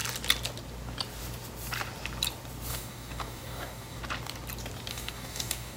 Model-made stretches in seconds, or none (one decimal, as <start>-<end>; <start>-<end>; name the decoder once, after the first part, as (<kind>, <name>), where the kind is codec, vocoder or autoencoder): 2.7-4.0 (codec, DAC); 4.9-5.8